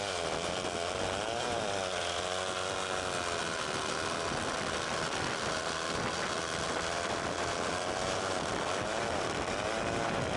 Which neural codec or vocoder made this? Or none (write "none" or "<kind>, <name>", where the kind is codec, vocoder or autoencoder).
vocoder, BigVGAN v2